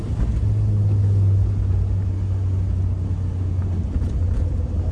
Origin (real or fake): real